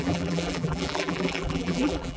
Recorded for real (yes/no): no